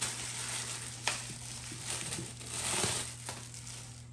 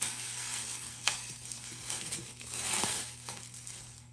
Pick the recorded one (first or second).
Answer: first